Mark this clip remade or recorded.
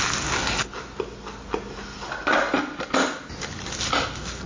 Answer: recorded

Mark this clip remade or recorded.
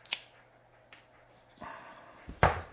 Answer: recorded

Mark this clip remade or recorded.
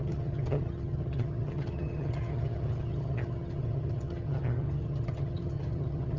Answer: remade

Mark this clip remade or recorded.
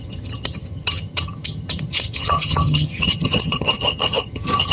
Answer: remade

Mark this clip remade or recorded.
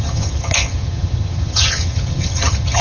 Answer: remade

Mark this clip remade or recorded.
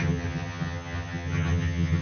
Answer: remade